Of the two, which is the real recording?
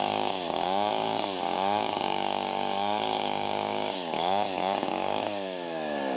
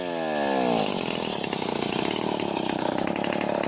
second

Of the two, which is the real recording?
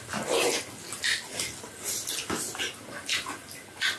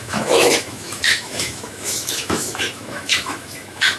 first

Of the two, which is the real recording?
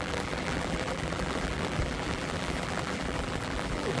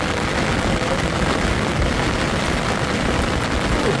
second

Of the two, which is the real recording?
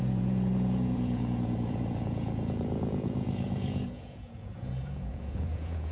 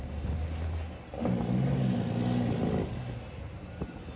second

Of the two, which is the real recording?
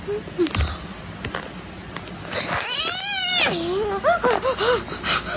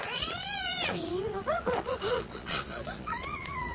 first